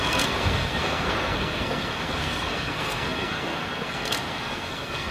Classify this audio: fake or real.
fake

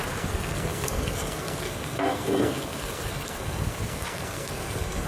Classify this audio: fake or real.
fake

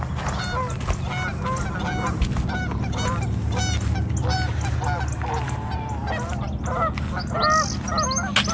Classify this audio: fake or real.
real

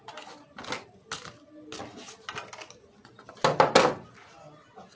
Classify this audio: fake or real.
real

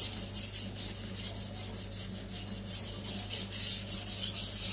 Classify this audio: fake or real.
real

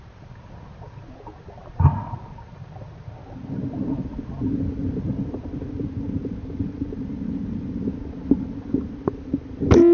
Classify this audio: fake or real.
real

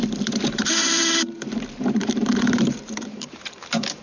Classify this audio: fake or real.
fake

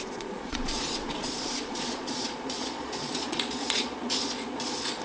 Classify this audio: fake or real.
fake